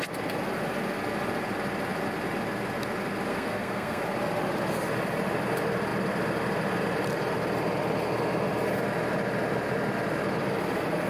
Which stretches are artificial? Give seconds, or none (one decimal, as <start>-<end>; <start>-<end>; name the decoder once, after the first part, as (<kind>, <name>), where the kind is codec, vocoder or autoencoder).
3.3-4.0 (codec, SNAC)